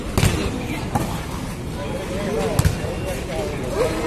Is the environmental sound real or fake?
real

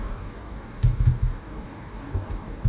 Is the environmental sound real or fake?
fake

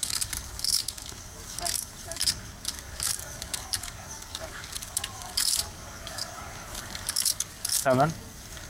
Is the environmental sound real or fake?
fake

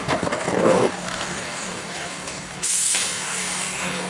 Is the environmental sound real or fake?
fake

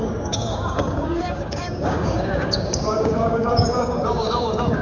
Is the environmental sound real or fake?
fake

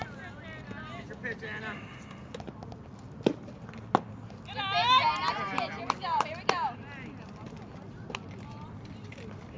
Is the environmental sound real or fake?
real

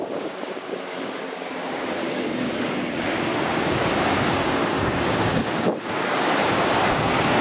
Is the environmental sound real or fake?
fake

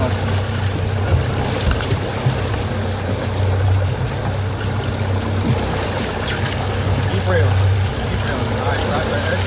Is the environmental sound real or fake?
real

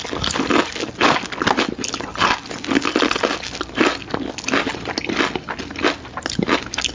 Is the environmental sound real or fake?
real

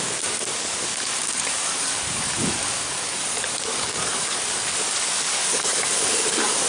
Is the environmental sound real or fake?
fake